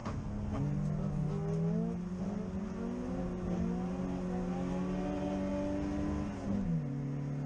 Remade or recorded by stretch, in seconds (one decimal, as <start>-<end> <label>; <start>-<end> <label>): 0.0-0.6 remade; 0.6-7.5 recorded